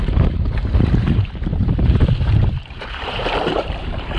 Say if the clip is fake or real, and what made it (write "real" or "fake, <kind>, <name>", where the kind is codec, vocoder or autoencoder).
fake, vocoder, BigVGAN v2